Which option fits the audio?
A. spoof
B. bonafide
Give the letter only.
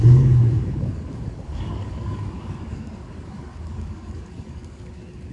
A